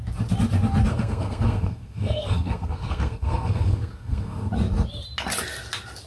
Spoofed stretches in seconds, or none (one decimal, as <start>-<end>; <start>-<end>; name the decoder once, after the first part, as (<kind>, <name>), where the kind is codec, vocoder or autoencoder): 0.9-4.5 (codec, SNAC)